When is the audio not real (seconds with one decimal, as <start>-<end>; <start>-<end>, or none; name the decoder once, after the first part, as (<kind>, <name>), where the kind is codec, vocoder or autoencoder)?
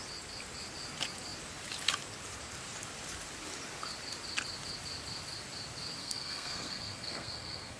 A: 6.0-7.8 (codec, SNAC)